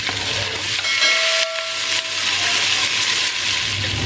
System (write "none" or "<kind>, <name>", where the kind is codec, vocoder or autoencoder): none